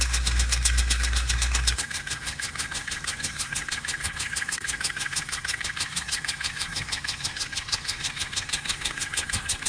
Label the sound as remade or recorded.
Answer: remade